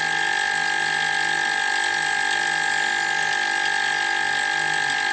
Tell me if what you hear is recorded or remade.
recorded